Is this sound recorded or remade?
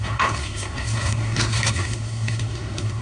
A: remade